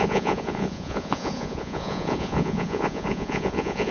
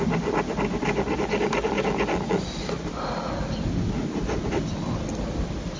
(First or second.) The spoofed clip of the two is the first